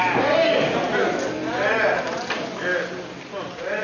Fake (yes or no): no